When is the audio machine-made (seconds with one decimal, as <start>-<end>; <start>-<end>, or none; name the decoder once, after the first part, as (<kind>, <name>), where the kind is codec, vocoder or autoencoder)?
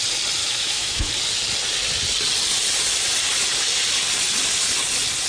0.4-1.1 (autoencoder, DAC-VAE)